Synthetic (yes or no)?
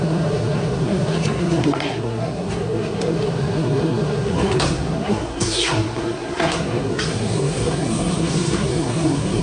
yes